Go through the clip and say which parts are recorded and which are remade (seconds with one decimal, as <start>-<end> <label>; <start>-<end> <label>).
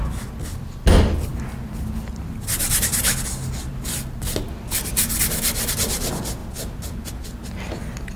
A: 0.0-1.3 recorded; 1.3-3.0 remade; 3.0-8.2 recorded